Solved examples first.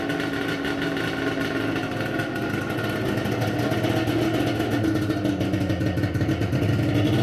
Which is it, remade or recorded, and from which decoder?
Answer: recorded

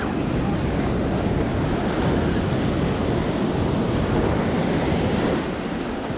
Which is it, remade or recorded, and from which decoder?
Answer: recorded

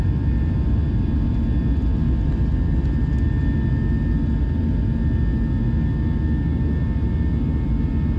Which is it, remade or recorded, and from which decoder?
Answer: recorded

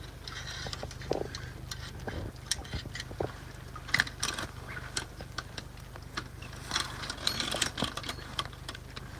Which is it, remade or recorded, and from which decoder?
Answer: recorded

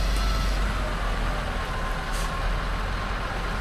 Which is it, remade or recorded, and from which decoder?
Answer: recorded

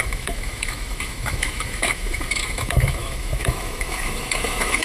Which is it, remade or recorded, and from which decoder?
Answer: remade, autoencoder, DAC-VAE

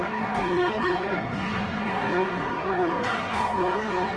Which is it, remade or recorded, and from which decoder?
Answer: remade, codec, SNAC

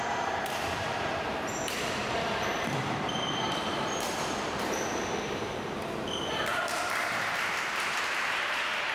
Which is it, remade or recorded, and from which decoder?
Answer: remade, vocoder, BigVGAN v2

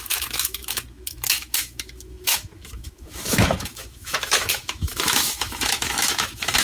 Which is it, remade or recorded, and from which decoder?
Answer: remade, autoencoder, DAC-VAE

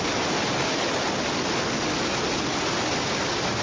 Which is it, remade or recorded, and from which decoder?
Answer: recorded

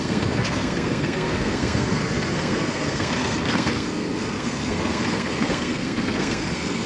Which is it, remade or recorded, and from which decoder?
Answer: remade, codec, SNAC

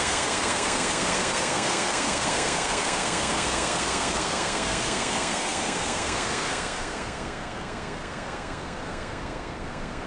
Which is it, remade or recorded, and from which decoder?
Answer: remade, codec, SNAC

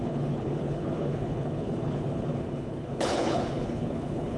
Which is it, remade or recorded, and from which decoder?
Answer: remade, codec, HILCodec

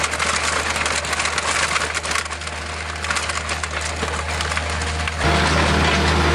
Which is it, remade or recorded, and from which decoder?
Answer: recorded